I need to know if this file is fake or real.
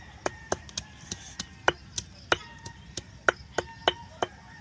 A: real